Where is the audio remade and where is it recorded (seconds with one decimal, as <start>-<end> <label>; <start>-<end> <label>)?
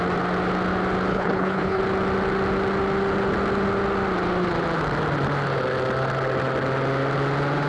0.0-1.1 recorded; 1.1-1.8 remade; 1.8-7.7 recorded